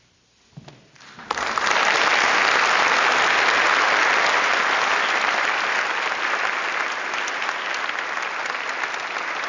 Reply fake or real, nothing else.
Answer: real